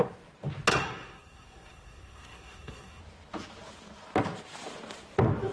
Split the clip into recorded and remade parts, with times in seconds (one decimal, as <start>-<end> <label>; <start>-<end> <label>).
0.0-0.7 recorded; 0.7-3.0 remade; 3.0-5.5 recorded